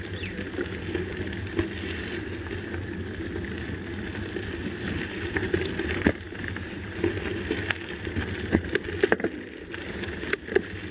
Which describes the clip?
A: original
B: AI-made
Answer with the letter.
A